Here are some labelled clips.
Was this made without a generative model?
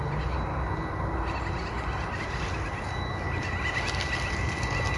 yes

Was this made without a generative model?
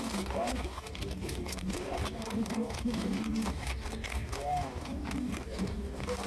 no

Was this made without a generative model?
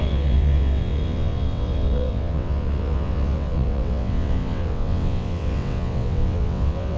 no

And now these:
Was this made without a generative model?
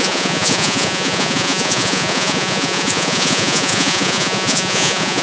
no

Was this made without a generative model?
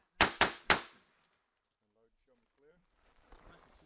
yes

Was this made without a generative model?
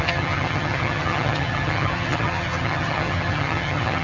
no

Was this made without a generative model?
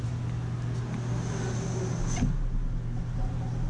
yes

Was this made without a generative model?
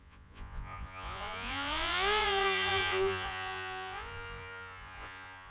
no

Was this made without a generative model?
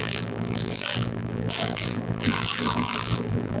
no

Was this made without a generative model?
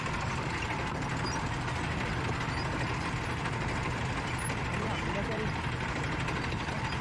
yes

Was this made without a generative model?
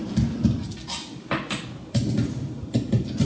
yes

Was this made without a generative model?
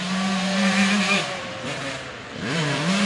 no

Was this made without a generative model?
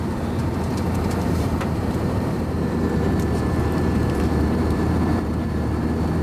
no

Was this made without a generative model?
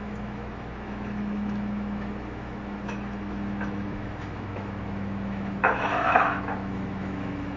no